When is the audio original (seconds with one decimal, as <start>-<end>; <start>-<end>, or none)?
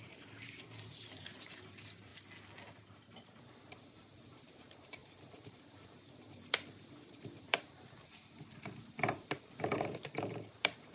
2.1-3.6